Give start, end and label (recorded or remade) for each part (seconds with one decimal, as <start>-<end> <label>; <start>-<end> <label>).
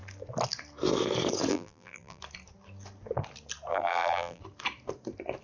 0.0-1.5 recorded; 1.5-2.2 remade; 2.2-3.7 recorded; 3.7-4.4 remade; 4.4-5.4 recorded